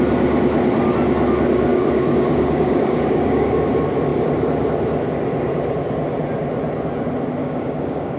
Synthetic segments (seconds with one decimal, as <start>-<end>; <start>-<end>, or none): 1.7-3.5; 7.4-8.2